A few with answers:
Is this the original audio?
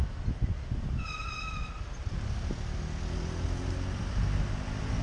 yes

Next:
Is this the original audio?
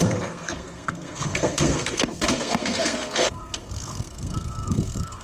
no